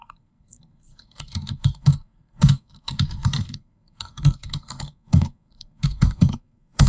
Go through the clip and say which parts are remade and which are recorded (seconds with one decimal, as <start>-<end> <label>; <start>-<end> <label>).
0.0-6.9 remade